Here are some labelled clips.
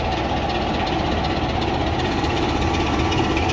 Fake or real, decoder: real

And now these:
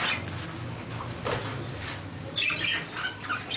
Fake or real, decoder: real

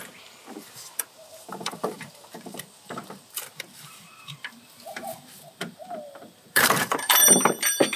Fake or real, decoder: fake, vocoder, BigVGAN v2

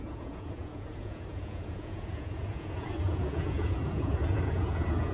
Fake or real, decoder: fake, vocoder, Vocos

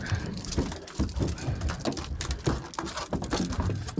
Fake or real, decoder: real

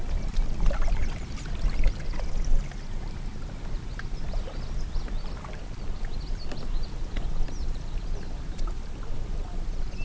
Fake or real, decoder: real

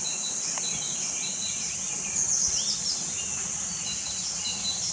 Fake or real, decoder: real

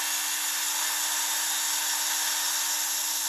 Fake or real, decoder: real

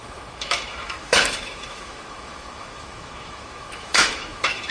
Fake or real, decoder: fake, autoencoder, DAC-VAE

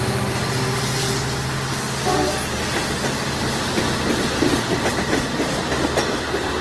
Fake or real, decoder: real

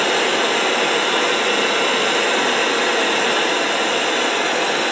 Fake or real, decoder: real